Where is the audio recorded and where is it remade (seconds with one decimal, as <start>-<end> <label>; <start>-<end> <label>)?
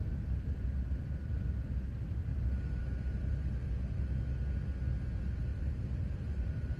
0.0-1.3 remade; 1.3-2.3 recorded; 2.3-3.3 remade; 3.3-5.5 recorded; 5.5-6.8 remade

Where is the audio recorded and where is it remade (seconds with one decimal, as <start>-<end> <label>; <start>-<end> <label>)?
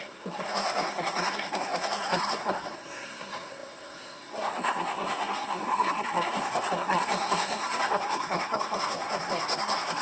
0.0-10.0 remade